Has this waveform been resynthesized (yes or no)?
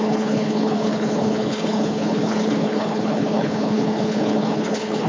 yes